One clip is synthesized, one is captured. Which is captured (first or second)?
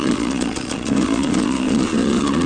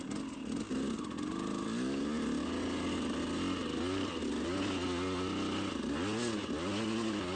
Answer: second